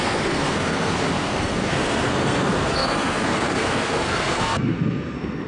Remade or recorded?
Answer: remade